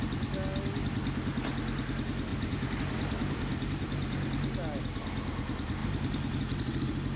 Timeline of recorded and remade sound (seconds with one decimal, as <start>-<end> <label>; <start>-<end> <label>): 0.0-2.3 recorded; 2.3-2.8 remade; 2.8-5.8 recorded; 5.8-6.4 remade; 6.4-7.2 recorded